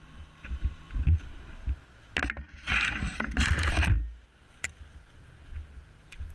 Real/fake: real